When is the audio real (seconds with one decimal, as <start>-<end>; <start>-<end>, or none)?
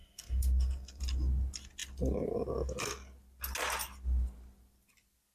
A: 1.0-5.3